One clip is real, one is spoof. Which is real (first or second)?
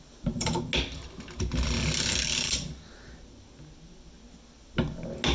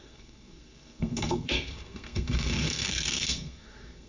first